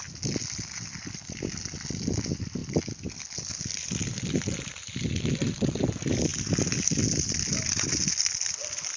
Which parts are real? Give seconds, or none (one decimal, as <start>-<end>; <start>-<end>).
0.0-9.0